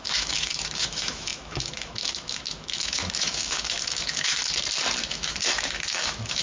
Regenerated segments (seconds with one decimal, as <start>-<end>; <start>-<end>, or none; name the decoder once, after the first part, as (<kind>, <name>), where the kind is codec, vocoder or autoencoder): 0.0-4.4 (autoencoder, DAC-VAE); 5.1-6.4